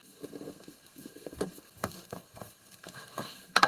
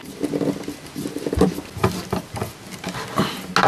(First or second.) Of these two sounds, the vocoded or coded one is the first